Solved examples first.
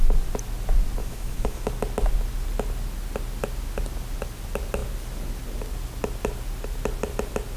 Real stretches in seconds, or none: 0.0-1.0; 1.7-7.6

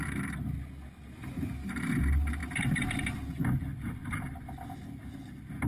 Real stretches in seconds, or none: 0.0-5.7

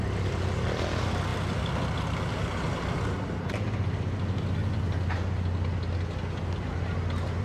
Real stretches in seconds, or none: 0.0-7.4